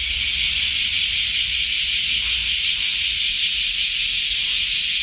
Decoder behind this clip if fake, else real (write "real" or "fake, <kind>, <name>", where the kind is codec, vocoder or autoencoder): real